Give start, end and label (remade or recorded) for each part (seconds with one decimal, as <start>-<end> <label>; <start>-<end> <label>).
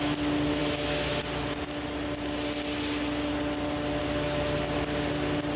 0.0-5.6 recorded